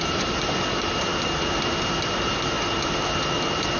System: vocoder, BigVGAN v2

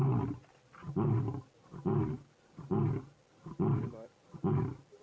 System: none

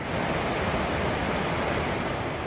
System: none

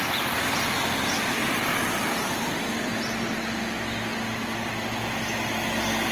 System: none